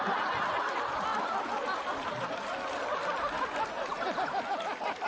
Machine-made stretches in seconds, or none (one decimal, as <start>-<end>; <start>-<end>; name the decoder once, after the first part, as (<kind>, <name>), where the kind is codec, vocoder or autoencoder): none